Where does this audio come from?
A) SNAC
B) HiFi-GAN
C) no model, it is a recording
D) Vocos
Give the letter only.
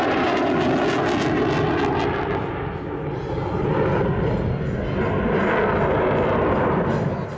C